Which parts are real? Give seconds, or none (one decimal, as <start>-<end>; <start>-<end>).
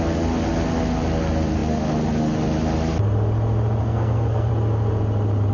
0.0-3.8; 4.5-5.5